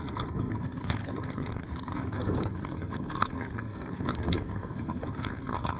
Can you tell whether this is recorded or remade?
remade